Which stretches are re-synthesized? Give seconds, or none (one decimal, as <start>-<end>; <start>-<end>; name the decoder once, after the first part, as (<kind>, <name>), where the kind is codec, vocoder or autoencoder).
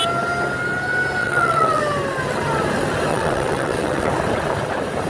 1.2-1.8 (vocoder, WaveNeXt); 3.1-4.1